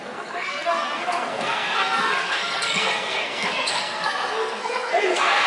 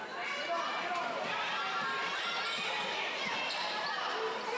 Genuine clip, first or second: second